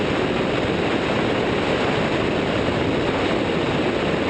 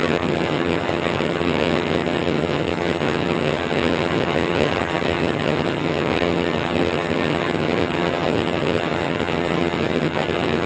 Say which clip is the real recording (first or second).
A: first